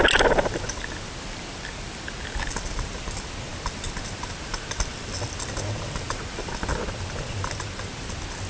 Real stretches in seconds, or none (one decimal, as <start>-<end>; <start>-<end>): 0.0-8.5